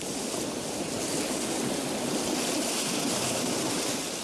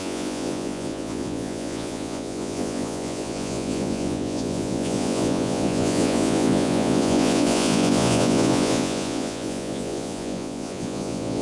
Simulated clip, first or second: second